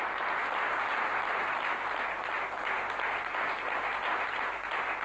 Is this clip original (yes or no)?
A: yes